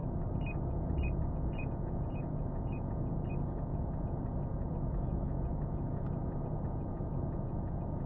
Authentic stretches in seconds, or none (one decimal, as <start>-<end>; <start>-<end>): none